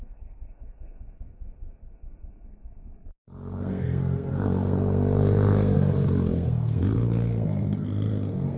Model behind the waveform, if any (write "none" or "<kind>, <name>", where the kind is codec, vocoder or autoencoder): codec, SNAC